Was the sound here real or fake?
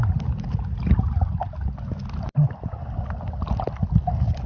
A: real